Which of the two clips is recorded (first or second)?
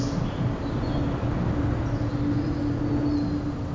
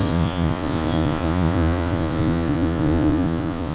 first